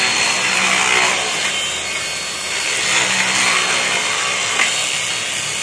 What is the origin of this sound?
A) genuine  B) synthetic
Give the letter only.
A